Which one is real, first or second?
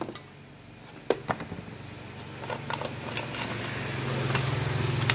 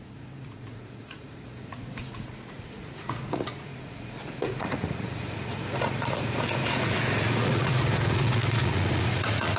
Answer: first